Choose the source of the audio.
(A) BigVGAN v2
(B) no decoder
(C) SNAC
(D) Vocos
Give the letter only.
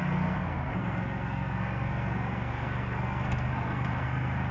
C